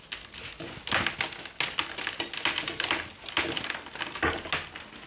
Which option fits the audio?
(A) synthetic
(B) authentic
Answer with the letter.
B